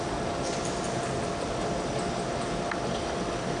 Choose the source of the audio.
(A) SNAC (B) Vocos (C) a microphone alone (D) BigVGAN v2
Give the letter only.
C